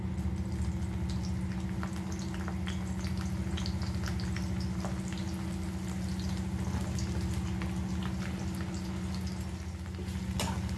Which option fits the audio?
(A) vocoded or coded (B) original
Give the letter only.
B